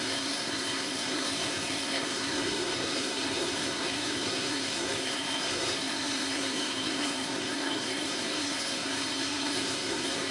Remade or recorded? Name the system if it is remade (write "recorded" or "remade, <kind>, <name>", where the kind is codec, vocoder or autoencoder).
remade, codec, SNAC